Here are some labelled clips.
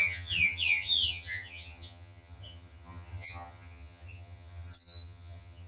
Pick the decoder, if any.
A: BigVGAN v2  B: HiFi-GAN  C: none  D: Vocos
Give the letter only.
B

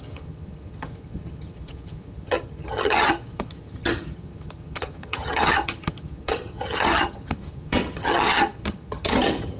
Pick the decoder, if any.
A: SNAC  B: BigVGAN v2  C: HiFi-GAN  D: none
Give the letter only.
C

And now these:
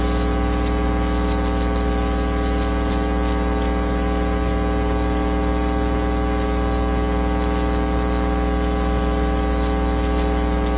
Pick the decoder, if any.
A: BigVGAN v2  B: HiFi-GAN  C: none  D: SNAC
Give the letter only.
C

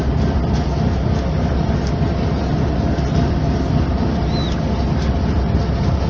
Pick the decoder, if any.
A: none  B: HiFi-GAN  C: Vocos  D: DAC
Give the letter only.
A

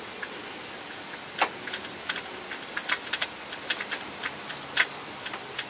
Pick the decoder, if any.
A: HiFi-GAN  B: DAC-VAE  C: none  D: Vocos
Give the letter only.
C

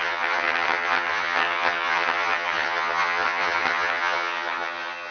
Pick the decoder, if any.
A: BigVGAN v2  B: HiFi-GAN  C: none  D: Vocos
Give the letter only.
B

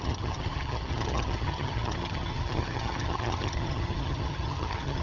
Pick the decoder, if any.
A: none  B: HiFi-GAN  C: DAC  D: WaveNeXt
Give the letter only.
B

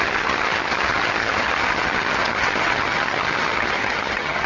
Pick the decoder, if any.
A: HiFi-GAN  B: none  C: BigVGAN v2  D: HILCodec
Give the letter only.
A